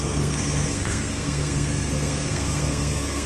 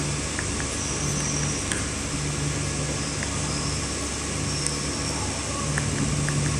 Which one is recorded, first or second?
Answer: second